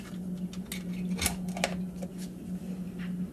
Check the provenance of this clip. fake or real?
real